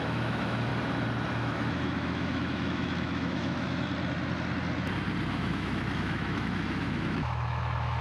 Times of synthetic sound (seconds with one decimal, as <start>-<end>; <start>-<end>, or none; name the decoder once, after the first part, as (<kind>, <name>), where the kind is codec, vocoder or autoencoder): 0.0-0.7 (autoencoder, DAC-VAE); 1.3-3.9; 5.3-8.0

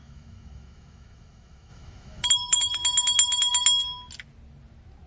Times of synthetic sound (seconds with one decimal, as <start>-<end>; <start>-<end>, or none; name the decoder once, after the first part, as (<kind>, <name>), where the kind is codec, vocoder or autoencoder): 0.0-2.8 (autoencoder, DAC-VAE)

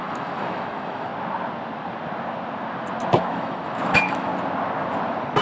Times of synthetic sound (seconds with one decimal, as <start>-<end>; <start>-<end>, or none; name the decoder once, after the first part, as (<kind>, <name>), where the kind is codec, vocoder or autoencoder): 0.0-1.1 (autoencoder, DAC-VAE); 3.2-4.3

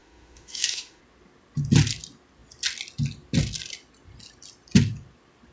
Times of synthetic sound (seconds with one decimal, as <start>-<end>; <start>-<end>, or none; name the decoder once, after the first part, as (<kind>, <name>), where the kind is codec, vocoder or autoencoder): 0.0-1.0 (autoencoder, DAC-VAE)